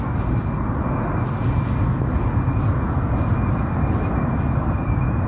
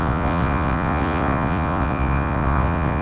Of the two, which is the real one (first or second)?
first